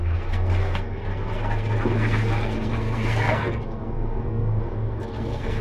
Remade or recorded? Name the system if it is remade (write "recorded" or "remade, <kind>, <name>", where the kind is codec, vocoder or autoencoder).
remade, codec, SNAC